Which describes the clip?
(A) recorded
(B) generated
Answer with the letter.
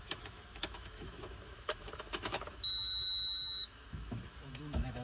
B